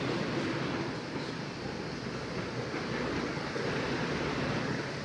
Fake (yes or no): yes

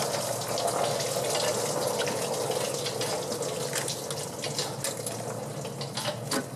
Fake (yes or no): no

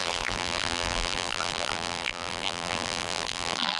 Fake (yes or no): yes